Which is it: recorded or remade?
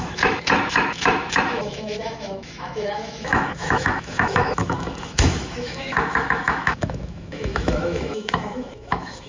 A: remade